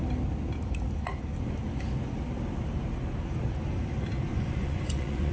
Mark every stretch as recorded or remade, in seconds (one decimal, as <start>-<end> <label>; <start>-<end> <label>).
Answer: 0.0-4.3 recorded; 4.3-5.3 remade